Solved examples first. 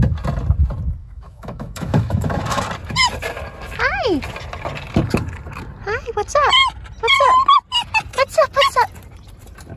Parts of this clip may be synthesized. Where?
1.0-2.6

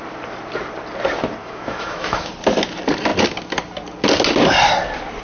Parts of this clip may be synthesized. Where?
1.4-2.3

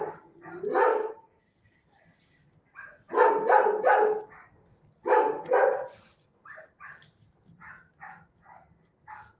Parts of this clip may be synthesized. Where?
none

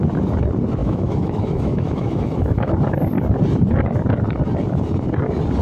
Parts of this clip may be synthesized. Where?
0.8-2.7

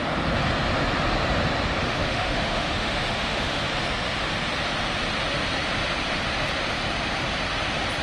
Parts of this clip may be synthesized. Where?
1.8-3.6